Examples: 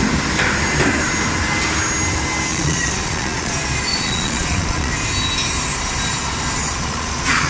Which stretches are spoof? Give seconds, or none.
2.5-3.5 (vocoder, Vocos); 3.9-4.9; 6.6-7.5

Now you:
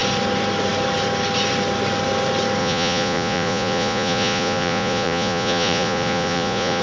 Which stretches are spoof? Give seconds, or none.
2.6-6.8 (vocoder, Vocos)

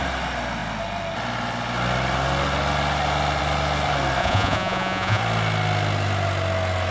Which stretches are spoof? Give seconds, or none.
4.2-5.2 (vocoder, Vocos)

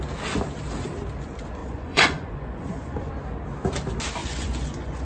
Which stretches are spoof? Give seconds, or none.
1.6-3.1 (vocoder, Vocos); 4.2-5.0

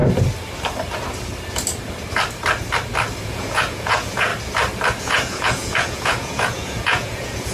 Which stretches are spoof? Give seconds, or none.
3.2-4.3 (vocoder, Vocos); 5.0-7.5

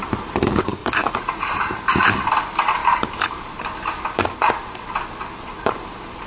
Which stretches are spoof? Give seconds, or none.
0.8-1.5 (vocoder, Vocos)

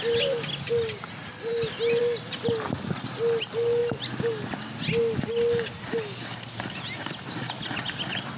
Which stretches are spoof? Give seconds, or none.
none